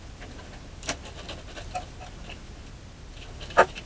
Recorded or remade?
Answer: recorded